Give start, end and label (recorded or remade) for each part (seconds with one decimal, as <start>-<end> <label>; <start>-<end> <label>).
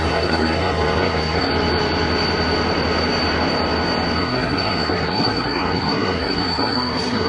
0.0-1.5 remade; 1.5-4.2 recorded; 4.2-7.3 remade